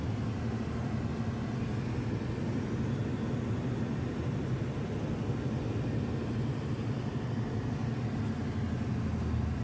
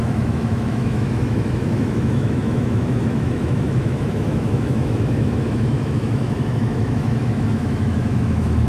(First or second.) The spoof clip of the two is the second